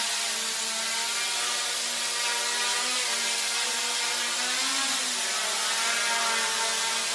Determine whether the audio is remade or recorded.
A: recorded